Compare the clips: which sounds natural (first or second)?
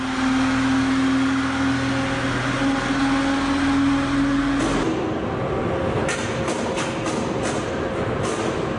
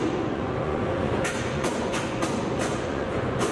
first